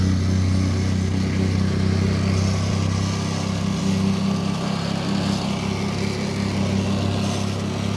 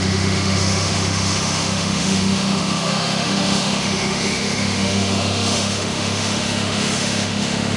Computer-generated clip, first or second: second